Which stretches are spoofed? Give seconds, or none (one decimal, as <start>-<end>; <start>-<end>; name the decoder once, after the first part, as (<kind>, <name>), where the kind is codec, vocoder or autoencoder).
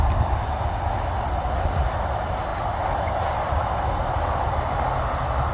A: none